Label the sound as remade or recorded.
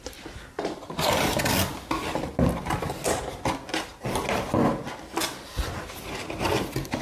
recorded